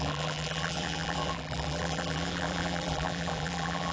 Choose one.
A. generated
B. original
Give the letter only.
A